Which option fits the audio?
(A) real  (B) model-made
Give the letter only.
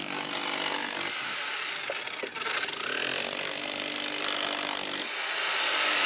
A